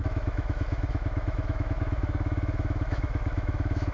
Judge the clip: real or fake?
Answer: fake